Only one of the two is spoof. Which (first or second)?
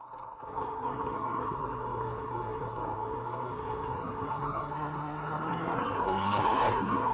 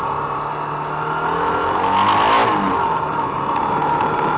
first